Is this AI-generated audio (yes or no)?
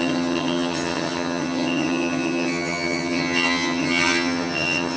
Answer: yes